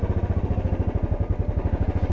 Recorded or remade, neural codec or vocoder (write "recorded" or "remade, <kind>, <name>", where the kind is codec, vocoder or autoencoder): recorded